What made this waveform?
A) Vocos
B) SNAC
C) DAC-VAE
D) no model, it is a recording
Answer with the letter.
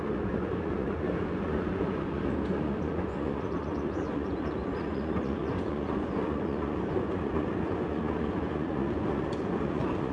A